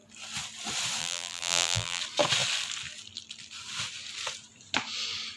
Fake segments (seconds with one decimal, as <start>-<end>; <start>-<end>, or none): 1.0-2.0